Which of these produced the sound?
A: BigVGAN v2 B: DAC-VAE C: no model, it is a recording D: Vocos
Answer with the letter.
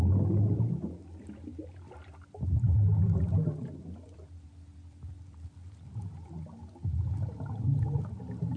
C